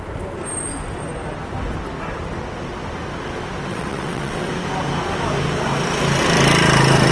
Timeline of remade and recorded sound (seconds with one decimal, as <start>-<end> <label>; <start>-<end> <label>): 0.0-3.7 recorded; 3.7-4.5 remade; 4.5-7.1 recorded